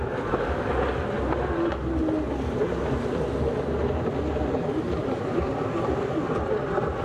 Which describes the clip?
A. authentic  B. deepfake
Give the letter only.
A